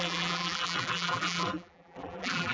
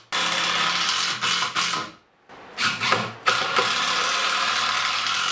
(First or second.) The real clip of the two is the second